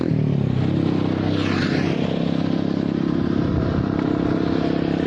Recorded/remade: recorded